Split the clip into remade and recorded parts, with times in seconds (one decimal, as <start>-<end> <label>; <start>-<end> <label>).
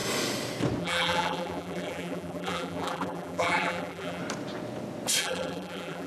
0.0-0.8 recorded; 0.8-4.2 remade; 4.2-5.2 recorded; 5.2-6.1 remade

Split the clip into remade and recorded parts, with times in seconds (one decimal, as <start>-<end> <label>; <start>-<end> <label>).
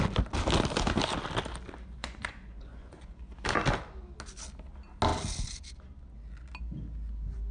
0.0-2.0 recorded; 2.0-3.2 remade; 3.2-7.5 recorded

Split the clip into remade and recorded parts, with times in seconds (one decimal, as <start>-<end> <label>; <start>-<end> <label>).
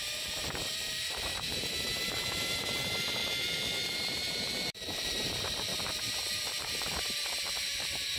0.0-3.2 remade; 3.2-3.9 recorded; 3.9-5.7 remade; 5.7-6.3 recorded; 6.3-8.2 remade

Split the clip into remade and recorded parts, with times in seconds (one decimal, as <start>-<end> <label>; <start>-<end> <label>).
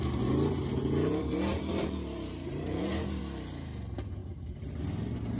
0.0-1.5 recorded; 1.5-3.2 remade; 3.2-4.2 recorded; 4.2-4.8 remade; 4.8-5.4 recorded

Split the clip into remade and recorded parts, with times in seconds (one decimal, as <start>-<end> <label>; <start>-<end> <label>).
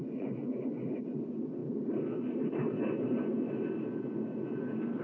0.0-0.7 remade; 0.7-5.0 recorded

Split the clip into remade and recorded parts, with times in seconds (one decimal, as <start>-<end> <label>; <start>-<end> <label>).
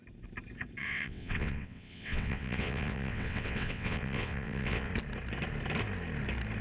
0.0-0.8 recorded; 0.8-4.9 remade; 4.9-6.6 recorded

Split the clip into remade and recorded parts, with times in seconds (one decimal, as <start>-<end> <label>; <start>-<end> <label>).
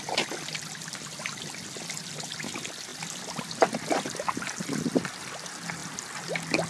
0.0-6.7 recorded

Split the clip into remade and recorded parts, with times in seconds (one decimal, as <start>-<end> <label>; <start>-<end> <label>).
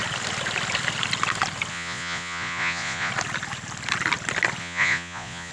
0.0-1.7 recorded; 1.7-3.1 remade; 3.1-4.6 recorded; 4.6-5.5 remade